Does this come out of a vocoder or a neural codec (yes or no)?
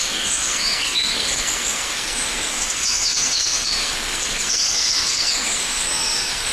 yes